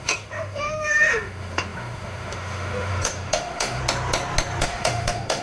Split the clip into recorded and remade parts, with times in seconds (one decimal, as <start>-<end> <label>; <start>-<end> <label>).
0.0-3.8 remade; 3.8-4.6 recorded; 4.6-5.4 remade